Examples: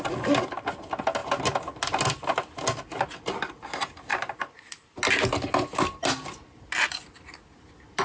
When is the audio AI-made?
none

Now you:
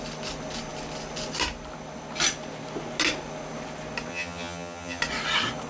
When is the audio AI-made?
4.1-5.0 (vocoder, HiFi-GAN)

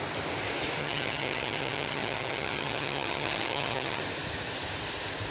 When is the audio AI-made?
0.8-4.0 (vocoder, HiFi-GAN)

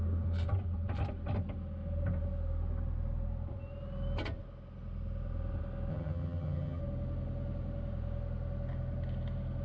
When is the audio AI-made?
5.9-6.8 (vocoder, HiFi-GAN)

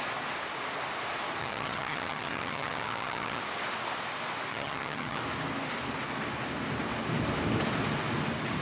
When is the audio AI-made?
1.4-3.4 (vocoder, HiFi-GAN); 4.5-5.2

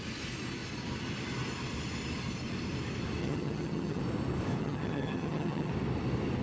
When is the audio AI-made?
3.2-4.0 (vocoder, HiFi-GAN); 4.6-5.7

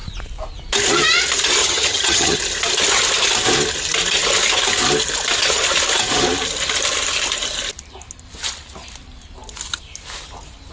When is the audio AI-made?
1.6-2.4 (vocoder, HiFi-GAN)

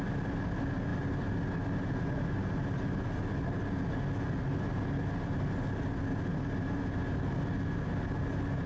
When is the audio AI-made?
none